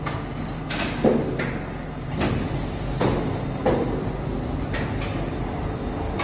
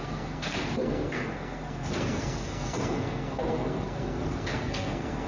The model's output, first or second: second